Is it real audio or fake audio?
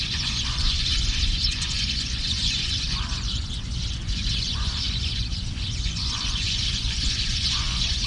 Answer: fake